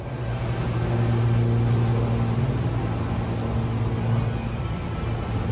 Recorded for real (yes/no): yes